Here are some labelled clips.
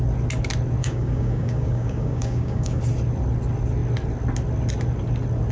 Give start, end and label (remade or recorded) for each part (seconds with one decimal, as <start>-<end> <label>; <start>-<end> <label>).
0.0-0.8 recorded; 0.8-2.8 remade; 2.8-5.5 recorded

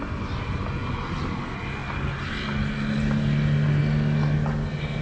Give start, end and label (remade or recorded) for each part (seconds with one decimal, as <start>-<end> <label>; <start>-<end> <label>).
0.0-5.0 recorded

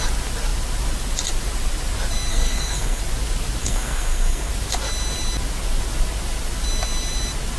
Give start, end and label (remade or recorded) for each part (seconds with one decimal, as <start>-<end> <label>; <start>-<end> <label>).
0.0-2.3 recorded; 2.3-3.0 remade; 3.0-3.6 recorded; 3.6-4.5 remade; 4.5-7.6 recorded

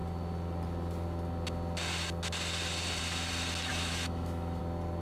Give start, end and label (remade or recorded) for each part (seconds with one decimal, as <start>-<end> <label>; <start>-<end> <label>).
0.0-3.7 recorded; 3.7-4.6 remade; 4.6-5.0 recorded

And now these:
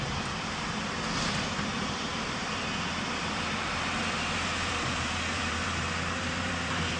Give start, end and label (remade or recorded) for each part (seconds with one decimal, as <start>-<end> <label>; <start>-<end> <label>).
0.0-7.0 remade

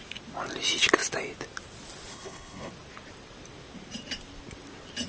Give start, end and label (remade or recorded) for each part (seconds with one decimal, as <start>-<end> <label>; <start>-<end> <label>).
0.0-2.1 recorded; 2.1-2.7 remade; 2.7-5.1 recorded

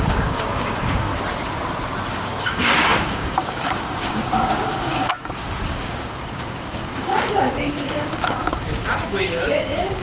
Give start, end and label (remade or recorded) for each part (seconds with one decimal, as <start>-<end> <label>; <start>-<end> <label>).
0.0-1.1 remade; 1.1-2.1 recorded; 2.1-10.0 remade